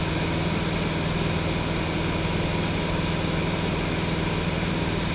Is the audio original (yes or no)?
yes